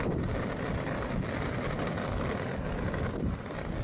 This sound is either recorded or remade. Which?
recorded